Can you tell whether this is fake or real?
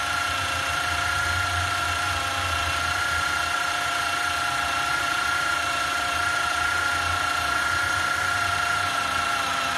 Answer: fake